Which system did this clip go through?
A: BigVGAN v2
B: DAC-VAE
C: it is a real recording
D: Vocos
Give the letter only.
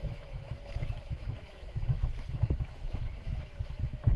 B